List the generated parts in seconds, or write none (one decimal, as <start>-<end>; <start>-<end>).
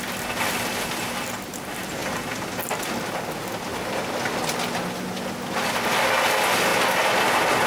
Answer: none